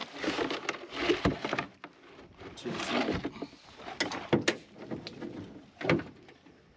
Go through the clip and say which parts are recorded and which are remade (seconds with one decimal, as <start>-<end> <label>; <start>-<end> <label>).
0.0-6.8 recorded

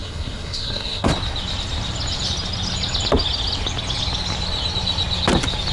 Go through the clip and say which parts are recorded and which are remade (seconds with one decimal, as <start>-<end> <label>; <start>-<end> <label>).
0.0-1.1 remade; 1.1-5.7 recorded

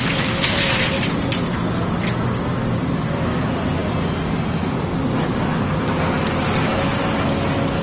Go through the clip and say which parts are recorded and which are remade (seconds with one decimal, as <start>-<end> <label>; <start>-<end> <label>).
0.0-7.8 recorded

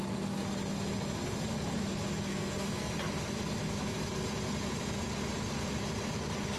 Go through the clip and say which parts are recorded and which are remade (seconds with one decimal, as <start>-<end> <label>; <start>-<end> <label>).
0.0-2.3 recorded; 2.3-2.9 remade; 2.9-6.6 recorded

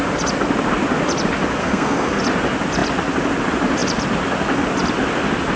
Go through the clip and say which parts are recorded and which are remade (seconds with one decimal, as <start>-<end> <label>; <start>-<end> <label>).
0.0-1.6 recorded; 1.6-2.2 remade; 2.2-5.6 recorded

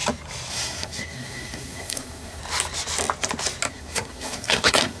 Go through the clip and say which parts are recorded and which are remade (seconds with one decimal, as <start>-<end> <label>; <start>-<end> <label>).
0.0-0.5 recorded; 0.5-2.4 remade; 2.4-3.7 recorded; 3.7-5.0 remade

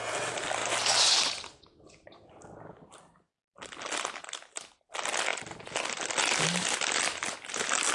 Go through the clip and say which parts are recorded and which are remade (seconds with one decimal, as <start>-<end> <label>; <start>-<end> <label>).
0.0-7.9 recorded